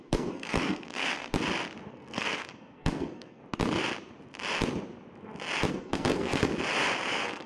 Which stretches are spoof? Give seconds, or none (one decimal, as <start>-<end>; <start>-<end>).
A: 0.0-1.3; 1.9-3.4; 5.7-6.5; 7.1-7.5